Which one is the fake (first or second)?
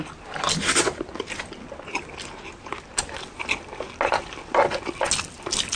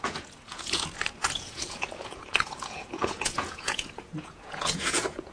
second